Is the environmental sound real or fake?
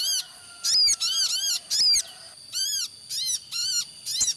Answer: real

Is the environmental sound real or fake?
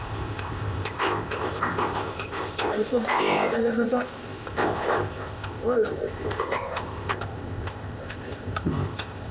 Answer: fake